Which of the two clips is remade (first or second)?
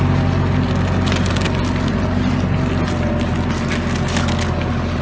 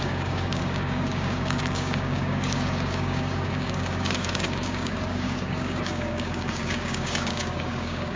second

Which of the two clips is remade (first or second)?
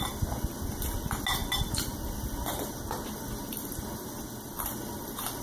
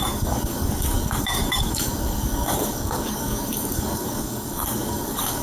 second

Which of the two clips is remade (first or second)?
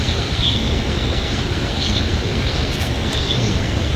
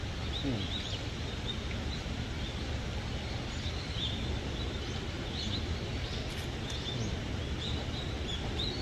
first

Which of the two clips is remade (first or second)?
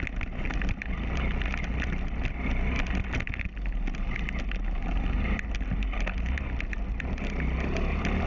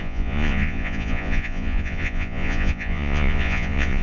second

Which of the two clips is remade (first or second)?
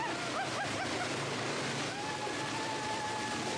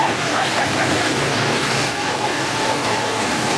second